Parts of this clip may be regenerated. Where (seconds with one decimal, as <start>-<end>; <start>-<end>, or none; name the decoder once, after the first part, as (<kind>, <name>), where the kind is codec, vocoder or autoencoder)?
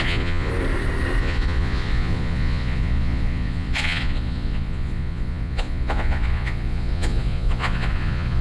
0.0-0.5 (vocoder, Vocos); 1.2-8.4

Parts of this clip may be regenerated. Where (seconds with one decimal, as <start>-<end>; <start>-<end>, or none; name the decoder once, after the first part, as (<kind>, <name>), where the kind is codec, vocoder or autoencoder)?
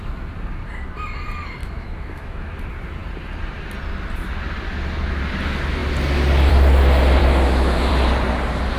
1.6-2.6 (autoencoder, DAC-VAE); 7.2-7.9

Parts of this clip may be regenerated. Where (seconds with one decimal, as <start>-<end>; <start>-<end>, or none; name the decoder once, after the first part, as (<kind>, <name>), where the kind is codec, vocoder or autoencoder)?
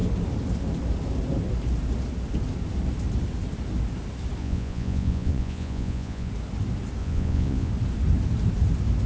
4.4-6.3 (vocoder, Vocos); 7.0-7.7